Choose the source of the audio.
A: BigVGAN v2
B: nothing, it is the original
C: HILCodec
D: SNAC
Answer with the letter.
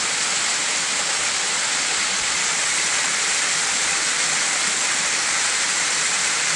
B